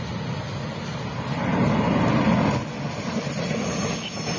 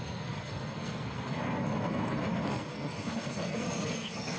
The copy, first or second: second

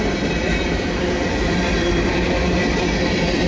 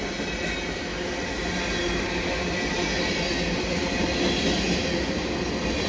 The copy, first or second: first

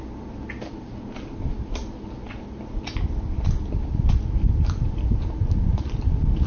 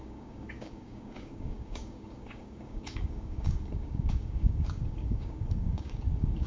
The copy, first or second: second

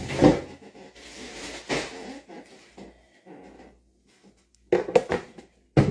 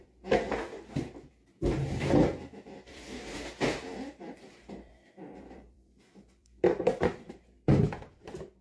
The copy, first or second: second